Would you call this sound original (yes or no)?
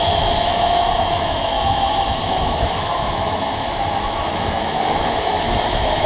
no